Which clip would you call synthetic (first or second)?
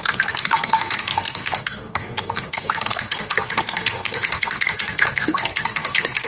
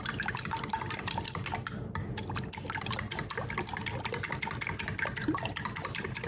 first